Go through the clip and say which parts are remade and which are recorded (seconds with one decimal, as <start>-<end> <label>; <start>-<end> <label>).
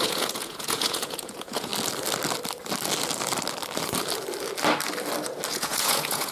0.0-1.7 remade; 1.7-5.5 recorded; 5.5-6.3 remade